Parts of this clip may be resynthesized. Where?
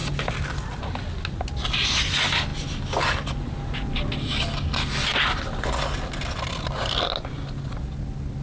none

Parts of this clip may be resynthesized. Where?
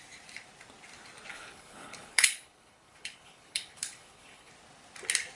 1.3-4.5 (codec, HILCodec)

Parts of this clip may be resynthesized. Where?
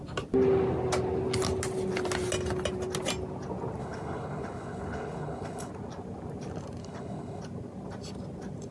3.8-5.7 (codec, HILCodec); 6.8-7.4